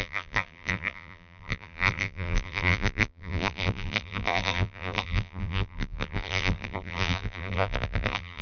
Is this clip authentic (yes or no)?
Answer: no